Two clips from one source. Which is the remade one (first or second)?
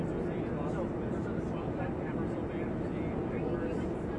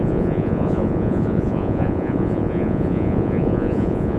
second